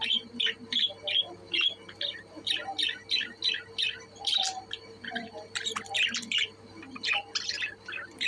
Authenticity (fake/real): real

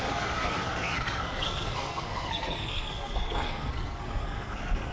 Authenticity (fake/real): fake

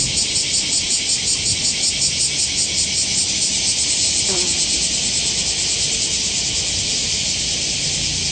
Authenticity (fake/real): real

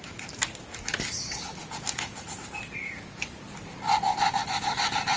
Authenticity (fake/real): real